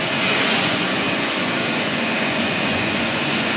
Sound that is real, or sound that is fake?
fake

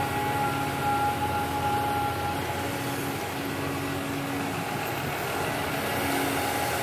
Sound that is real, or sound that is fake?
real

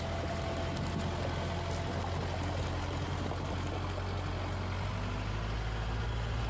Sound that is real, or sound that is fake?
real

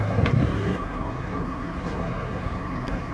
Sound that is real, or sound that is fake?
fake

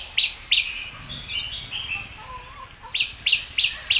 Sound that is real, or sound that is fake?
real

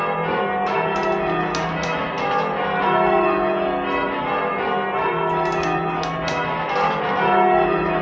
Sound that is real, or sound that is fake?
real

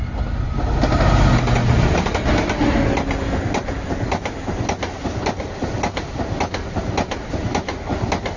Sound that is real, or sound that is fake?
real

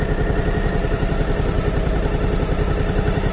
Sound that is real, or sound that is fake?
real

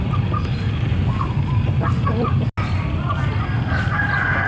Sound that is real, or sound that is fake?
real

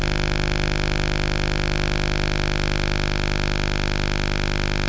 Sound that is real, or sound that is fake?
real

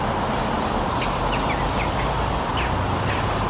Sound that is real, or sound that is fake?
real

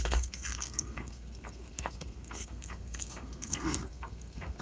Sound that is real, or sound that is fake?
fake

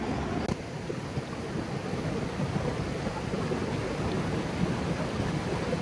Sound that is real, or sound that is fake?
real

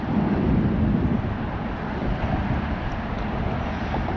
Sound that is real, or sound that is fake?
fake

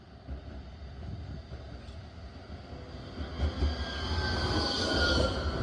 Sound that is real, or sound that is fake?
real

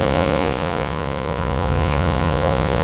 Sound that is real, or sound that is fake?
fake